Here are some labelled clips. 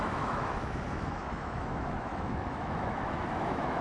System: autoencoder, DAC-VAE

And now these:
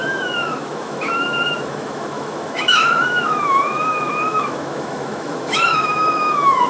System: autoencoder, DAC-VAE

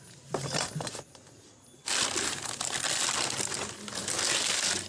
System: none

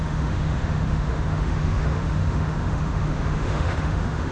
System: autoencoder, DAC-VAE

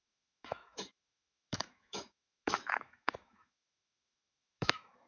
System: autoencoder, DAC-VAE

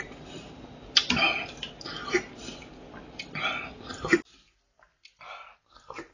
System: none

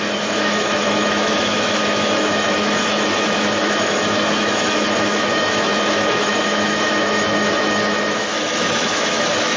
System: autoencoder, DAC-VAE